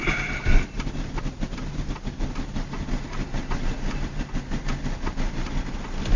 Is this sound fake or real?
real